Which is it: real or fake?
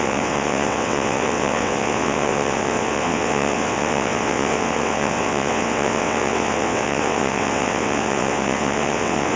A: fake